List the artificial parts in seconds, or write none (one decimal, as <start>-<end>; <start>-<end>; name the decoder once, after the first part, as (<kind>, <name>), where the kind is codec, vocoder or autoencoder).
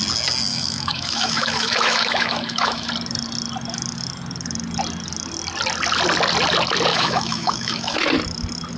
0.5-2.9 (autoencoder, DAC-VAE); 6.9-8.0